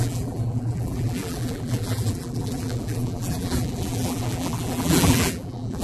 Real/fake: fake